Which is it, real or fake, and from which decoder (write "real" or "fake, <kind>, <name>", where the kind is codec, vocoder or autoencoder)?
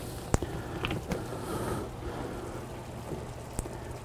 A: real